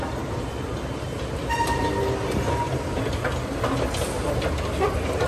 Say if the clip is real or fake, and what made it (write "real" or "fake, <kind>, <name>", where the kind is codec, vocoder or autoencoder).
real